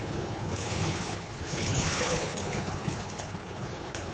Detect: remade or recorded remade